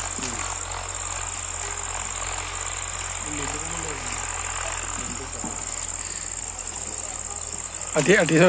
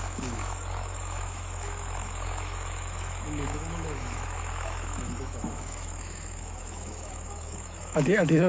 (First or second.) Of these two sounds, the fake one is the second